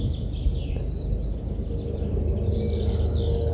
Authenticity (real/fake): real